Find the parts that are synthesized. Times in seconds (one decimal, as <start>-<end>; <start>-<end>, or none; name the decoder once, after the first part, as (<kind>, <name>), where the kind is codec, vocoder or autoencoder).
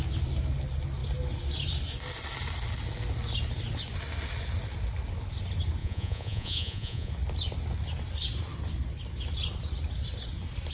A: 5.8-7.1 (vocoder, Vocos)